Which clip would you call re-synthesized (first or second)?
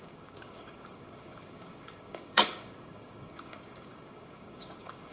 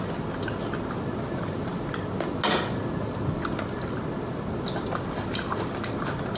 first